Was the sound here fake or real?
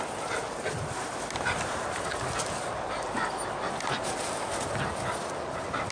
real